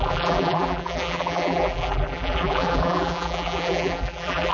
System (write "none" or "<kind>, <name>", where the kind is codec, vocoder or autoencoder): vocoder, BigVGAN v2